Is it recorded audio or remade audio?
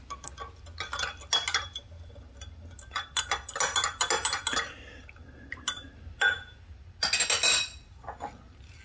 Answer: recorded